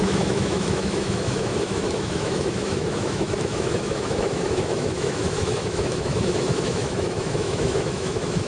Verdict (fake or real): fake